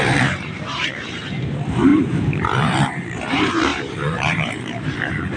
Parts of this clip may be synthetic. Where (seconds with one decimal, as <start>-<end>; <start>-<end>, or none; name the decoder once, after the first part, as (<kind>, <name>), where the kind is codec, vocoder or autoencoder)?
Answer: 0.0-5.4 (vocoder, BigVGAN v2)

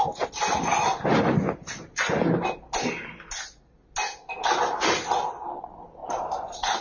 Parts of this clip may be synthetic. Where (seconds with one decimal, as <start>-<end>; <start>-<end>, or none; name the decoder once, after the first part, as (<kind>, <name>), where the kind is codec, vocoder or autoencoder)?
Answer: none

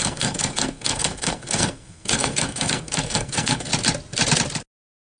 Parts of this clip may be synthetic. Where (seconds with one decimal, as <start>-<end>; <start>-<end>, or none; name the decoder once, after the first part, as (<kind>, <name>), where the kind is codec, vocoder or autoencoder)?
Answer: 0.0-3.7 (codec, SNAC)

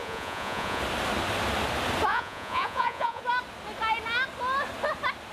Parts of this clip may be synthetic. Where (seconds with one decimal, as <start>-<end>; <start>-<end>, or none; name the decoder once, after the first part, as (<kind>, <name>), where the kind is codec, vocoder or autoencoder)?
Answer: 0.0-0.8 (vocoder, Vocos); 2.1-3.2

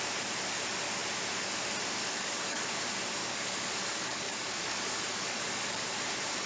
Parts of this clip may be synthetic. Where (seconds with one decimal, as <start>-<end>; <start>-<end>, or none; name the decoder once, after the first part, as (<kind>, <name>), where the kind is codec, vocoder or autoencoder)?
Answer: 2.0-2.7 (codec, DAC); 3.2-6.0

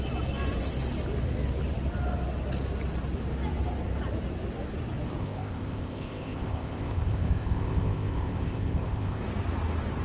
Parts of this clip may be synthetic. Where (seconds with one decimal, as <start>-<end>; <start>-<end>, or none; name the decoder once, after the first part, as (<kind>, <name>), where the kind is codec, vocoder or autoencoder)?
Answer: 5.2-9.2 (codec, ZipCodec)